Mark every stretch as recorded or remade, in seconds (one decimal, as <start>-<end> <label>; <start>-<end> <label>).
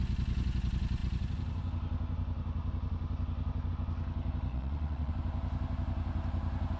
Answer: 0.0-4.5 recorded; 4.5-5.1 remade; 5.1-6.8 recorded